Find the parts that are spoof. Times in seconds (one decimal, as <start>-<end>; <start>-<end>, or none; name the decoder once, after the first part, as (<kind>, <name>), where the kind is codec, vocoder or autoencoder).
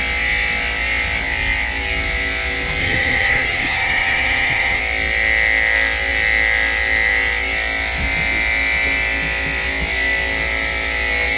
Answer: 2.8-4.8 (vocoder, HiFi-GAN)